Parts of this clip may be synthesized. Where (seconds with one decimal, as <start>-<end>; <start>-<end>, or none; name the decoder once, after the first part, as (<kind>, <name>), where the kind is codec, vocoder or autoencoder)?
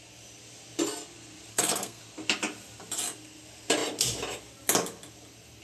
1.5-2.0 (codec, SNAC)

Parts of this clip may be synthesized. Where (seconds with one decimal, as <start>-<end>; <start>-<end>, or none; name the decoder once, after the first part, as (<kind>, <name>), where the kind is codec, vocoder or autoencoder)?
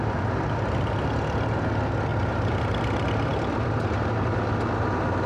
2.1-4.2 (vocoder, BigVGAN v2)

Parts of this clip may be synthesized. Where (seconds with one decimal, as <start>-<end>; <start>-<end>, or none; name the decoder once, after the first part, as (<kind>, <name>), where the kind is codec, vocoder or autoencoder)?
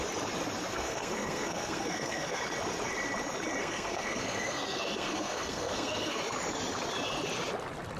0.7-2.4 (codec, SNAC); 3.6-6.2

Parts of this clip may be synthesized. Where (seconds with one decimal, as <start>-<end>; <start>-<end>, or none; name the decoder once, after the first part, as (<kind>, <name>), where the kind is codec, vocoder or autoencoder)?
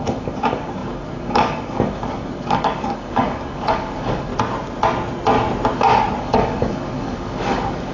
0.0-4.3 (codec, DAC); 6.2-7.9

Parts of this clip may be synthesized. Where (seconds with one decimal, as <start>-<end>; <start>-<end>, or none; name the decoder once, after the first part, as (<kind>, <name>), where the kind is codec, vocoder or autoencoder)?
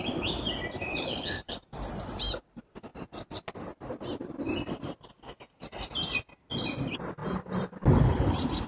0.9-1.6 (codec, HILCodec)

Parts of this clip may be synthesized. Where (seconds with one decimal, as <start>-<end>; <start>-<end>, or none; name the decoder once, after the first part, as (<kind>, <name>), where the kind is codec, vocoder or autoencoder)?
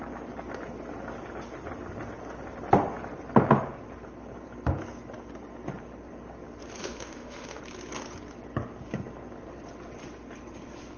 6.8-7.6 (autoencoder, DAC-VAE)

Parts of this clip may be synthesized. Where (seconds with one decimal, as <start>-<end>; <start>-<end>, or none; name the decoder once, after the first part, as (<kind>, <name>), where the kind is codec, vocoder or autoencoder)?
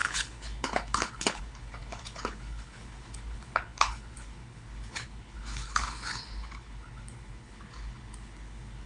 0.0-8.9 (codec, HILCodec)